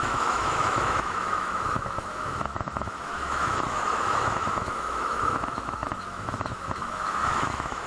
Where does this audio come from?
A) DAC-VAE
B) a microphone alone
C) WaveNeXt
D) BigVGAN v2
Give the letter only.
A